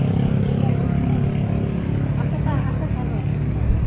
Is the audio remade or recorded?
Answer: recorded